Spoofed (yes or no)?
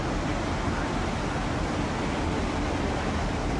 no